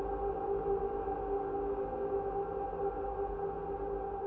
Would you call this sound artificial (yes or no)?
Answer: no